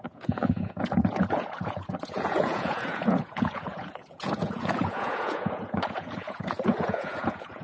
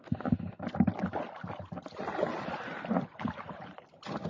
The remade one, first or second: first